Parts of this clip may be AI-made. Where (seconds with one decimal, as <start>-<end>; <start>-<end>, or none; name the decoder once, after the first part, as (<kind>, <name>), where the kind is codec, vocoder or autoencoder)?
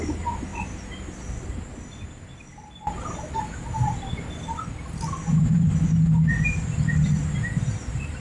none